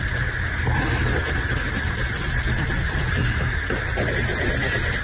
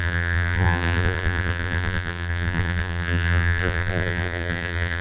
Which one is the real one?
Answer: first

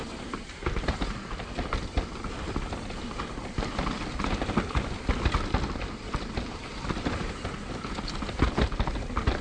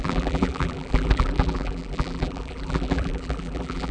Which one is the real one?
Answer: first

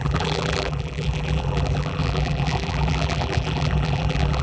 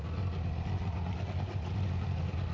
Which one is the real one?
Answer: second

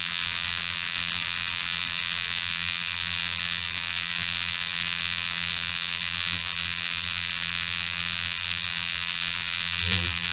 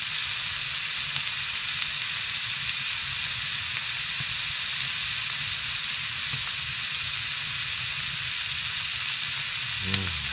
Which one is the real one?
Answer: second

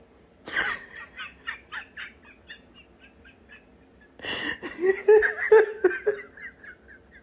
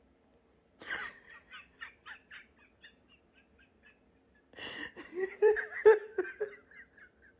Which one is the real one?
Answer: first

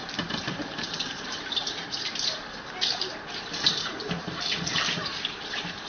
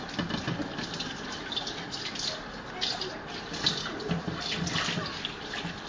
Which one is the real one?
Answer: second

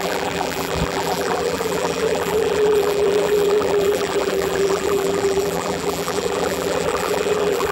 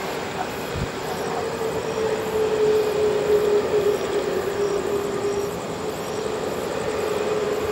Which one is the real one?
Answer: second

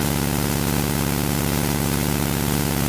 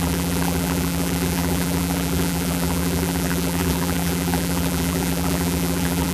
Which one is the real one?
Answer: first